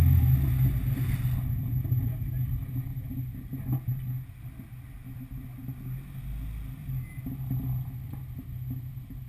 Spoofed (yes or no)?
no